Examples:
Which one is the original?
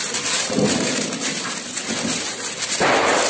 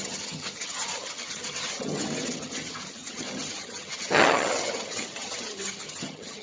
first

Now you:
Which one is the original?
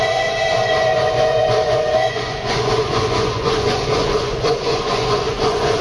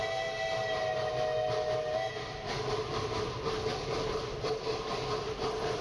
second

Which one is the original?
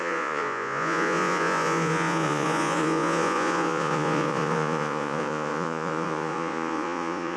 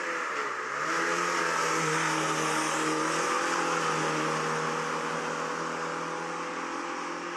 second